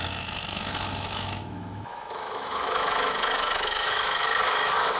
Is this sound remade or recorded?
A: remade